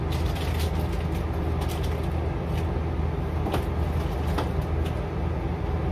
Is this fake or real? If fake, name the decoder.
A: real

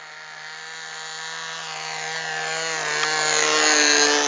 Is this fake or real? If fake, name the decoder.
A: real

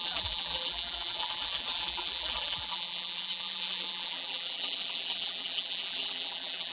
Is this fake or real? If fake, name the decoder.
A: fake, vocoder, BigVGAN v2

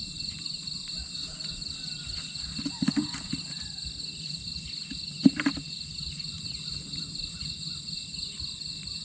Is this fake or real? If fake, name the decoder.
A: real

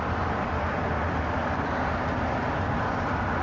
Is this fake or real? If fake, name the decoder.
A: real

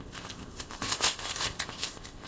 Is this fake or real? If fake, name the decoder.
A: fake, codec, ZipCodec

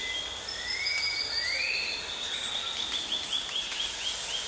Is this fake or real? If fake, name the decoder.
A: real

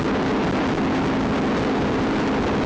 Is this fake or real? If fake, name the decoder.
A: real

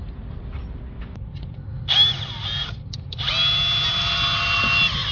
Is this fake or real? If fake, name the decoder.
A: real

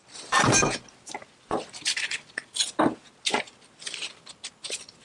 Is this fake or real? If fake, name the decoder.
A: real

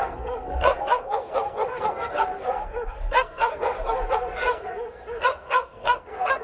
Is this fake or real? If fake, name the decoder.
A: fake, codec, SNAC